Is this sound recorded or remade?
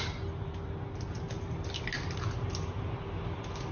recorded